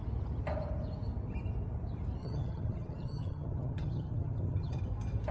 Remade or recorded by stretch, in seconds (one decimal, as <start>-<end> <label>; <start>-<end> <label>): 0.0-2.2 recorded; 2.2-4.8 remade; 4.8-5.3 recorded